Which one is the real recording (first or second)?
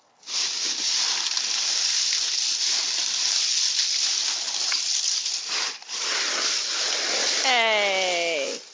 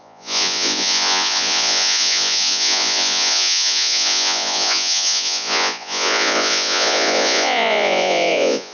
first